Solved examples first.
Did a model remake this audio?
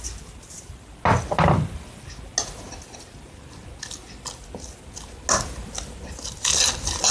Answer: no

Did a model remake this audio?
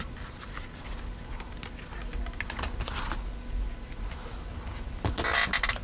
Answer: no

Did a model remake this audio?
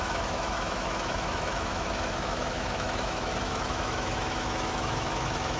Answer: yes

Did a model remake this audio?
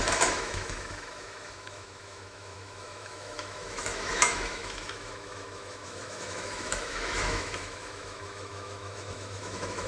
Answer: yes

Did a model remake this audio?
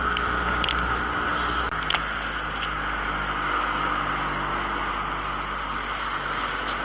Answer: no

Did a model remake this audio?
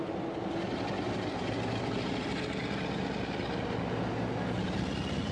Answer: no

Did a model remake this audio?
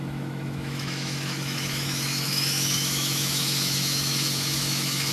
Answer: yes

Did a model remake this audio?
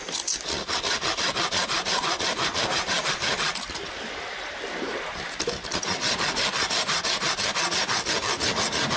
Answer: no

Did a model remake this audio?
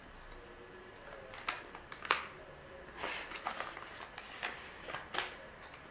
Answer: no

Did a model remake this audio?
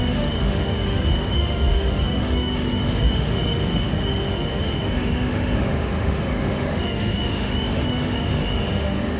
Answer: yes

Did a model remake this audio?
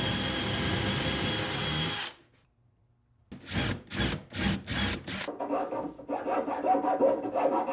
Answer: no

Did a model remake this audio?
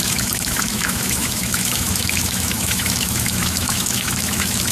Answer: yes